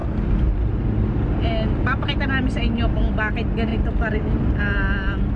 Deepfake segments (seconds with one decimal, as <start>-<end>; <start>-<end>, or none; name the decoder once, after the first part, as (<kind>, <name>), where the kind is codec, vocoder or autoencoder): none